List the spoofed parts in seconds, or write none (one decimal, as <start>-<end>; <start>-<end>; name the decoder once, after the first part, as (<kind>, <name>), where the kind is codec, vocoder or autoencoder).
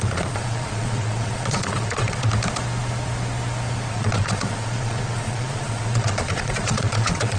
0.0-2.3 (vocoder, Vocos); 3.9-7.4